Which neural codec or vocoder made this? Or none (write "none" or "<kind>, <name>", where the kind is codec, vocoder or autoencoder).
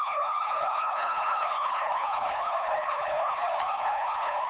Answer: codec, HILCodec